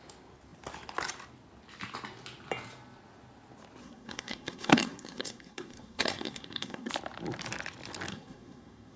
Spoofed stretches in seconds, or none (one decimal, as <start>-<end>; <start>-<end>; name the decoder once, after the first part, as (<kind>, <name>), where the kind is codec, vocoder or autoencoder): 3.8-6.9 (codec, SNAC); 8.1-9.0

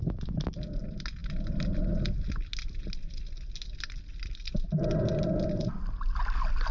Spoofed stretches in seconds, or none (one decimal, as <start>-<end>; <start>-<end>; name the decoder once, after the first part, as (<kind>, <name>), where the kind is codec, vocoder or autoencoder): none

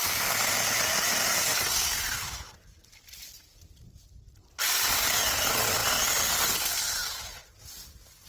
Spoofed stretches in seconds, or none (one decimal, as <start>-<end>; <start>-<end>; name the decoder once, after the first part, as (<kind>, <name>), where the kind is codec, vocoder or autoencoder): none